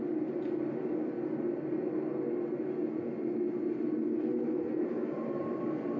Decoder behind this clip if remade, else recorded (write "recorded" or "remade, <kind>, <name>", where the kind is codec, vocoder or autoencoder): recorded